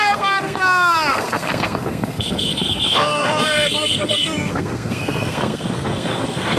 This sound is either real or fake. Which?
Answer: fake